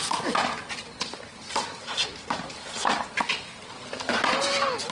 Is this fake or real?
real